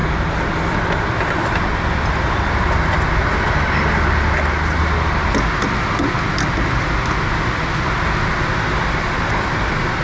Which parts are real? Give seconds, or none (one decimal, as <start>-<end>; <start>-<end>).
0.0-10.0